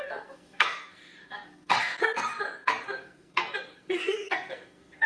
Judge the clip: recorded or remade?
remade